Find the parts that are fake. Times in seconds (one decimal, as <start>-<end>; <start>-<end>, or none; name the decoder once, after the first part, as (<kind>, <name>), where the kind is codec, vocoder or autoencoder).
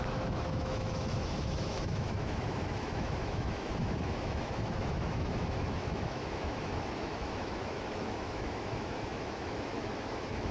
0.0-10.5 (autoencoder, DAC-VAE)